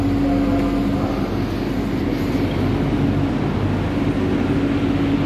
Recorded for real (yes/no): yes